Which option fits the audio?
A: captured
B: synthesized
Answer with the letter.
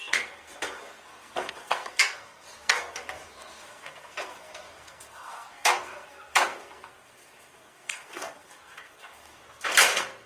B